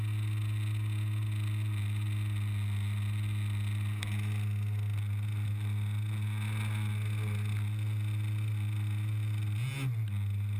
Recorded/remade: recorded